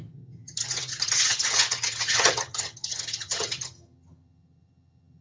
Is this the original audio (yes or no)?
no